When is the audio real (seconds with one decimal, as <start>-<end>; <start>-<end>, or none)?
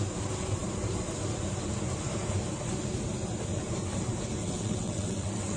0.0-4.4